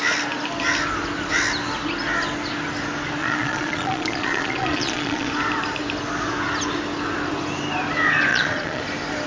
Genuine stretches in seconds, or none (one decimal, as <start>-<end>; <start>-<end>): 0.0-3.2; 5.3-8.3; 8.8-9.3